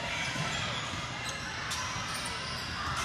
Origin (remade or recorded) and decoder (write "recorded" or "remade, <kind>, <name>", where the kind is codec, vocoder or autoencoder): recorded